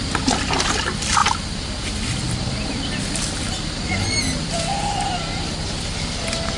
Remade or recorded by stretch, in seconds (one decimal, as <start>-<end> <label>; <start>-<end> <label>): 0.0-1.2 recorded; 1.2-2.4 remade; 2.4-6.6 recorded